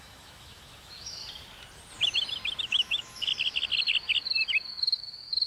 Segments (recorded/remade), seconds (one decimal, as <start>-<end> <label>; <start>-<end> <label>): 0.0-1.2 remade; 1.2-2.6 recorded; 2.6-3.3 remade; 3.3-4.8 recorded; 4.8-5.5 remade